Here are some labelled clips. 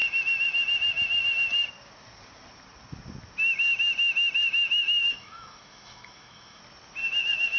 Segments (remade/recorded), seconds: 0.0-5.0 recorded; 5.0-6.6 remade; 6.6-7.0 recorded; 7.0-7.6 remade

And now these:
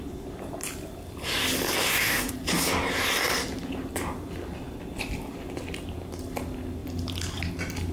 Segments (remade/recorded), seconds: 0.0-1.8 recorded; 1.8-2.3 remade; 2.3-7.9 recorded

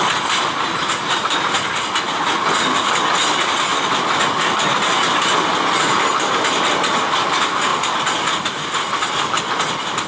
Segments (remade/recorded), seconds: 0.0-10.1 recorded

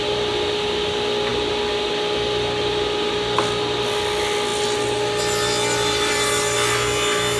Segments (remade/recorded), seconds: 0.0-7.4 recorded

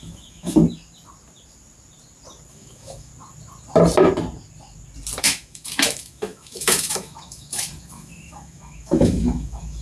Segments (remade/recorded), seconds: 0.0-0.6 remade; 0.6-2.5 recorded; 2.5-3.1 remade; 3.1-5.2 recorded; 5.2-9.8 remade